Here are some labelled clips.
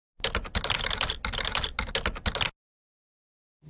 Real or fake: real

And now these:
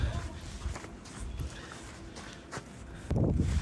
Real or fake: real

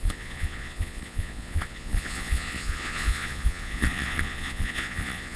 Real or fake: fake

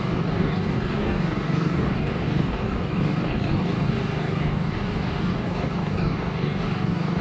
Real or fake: fake